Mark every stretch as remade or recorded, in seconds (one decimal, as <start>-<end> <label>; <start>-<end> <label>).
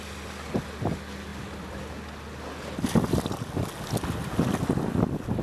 0.0-5.4 recorded